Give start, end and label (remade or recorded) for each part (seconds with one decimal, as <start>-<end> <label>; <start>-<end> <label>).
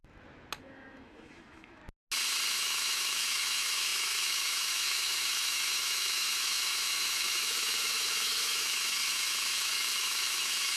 0.0-0.6 recorded; 0.6-1.8 remade; 1.8-2.5 recorded; 2.5-10.8 remade